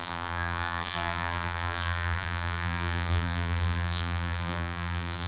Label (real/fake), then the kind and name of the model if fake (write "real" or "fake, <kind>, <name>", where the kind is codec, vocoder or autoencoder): fake, vocoder, BigVGAN v2